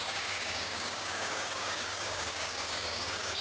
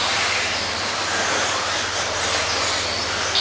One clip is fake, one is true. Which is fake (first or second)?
first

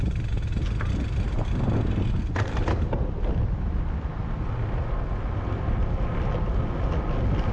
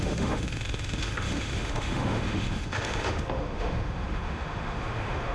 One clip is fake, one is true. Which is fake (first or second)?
second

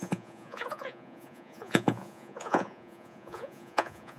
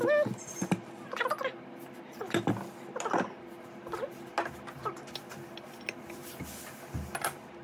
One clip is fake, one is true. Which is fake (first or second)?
first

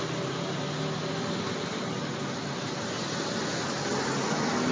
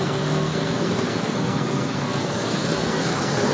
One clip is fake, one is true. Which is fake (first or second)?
second